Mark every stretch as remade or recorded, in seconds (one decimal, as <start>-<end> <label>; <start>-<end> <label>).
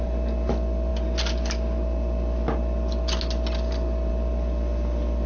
0.0-5.3 recorded